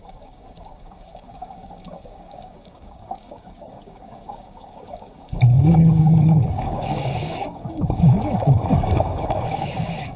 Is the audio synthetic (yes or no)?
yes